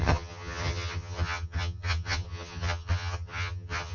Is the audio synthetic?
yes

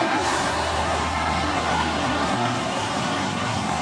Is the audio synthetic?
yes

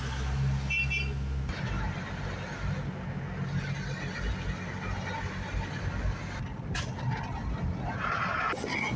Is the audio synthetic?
no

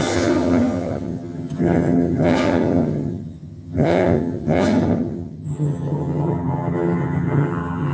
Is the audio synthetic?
yes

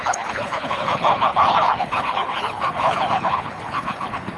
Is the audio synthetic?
yes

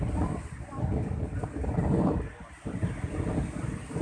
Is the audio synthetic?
no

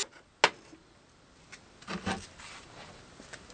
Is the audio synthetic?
no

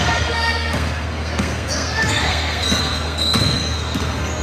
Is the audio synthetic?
yes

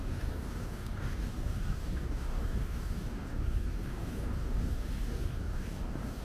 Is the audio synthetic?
yes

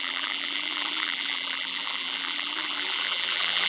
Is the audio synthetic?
yes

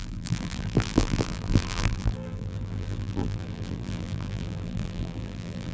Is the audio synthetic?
yes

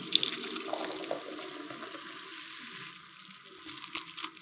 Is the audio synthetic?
no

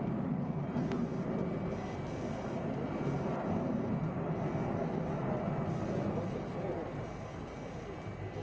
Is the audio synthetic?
no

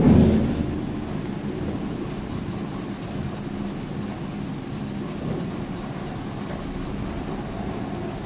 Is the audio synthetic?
no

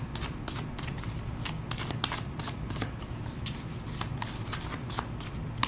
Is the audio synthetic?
no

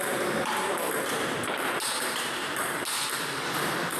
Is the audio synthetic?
yes